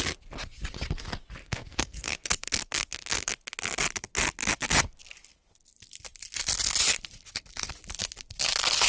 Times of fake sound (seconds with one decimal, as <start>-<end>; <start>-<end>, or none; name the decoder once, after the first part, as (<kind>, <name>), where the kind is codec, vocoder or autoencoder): 1.4-3.3 (codec, SNAC)

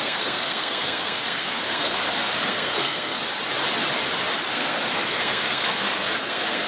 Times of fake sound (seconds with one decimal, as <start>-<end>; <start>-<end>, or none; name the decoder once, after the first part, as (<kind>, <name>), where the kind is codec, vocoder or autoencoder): 0.0-3.2 (codec, SNAC); 4.5-6.7

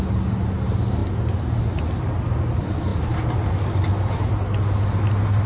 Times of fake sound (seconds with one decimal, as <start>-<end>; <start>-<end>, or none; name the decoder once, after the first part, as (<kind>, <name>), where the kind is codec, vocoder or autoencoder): none

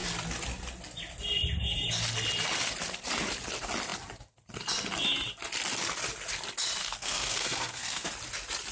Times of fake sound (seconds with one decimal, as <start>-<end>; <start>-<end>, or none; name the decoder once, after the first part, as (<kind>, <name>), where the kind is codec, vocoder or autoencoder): 6.8-8.1 (codec, SNAC)